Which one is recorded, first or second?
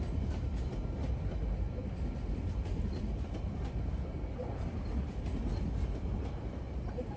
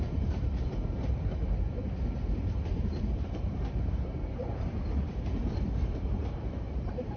first